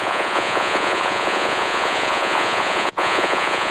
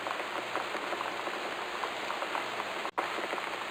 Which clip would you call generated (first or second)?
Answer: first